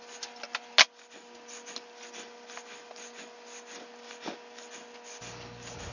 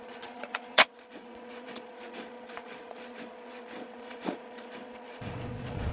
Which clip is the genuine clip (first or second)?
first